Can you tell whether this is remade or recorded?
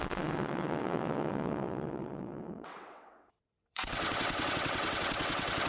remade